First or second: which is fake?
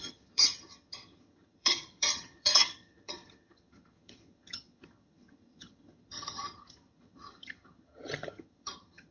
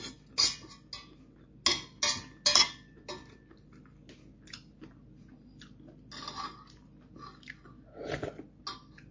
first